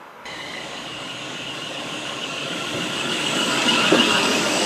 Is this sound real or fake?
fake